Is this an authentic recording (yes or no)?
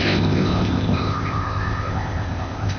no